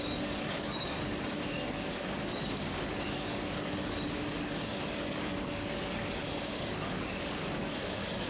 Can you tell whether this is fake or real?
fake